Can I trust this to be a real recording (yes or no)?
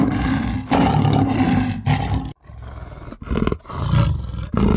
yes